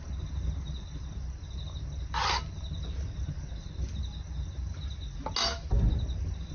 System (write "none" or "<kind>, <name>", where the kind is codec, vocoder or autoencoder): none